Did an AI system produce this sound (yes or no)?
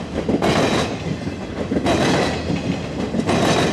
no